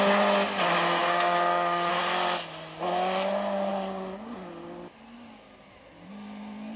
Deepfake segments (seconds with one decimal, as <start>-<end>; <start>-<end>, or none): 1.0-1.9